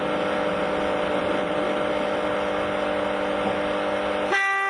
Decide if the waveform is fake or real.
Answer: real